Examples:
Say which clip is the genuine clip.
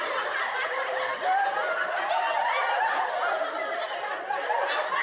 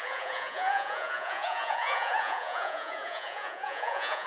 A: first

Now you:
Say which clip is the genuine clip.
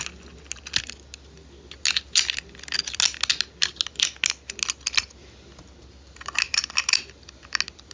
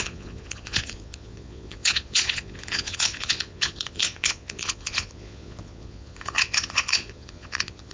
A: first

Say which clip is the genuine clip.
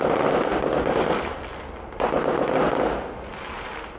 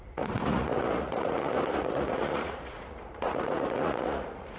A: first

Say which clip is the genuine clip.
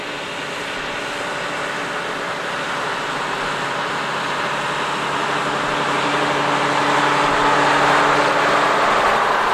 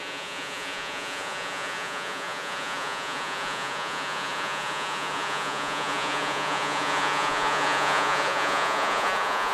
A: first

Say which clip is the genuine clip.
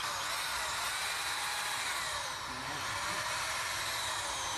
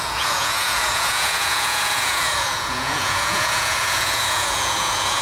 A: first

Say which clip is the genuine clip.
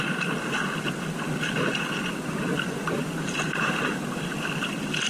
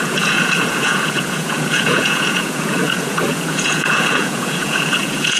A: first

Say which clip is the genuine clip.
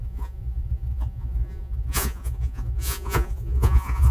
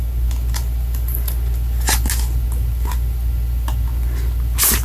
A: second